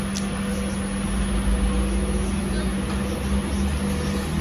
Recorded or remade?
recorded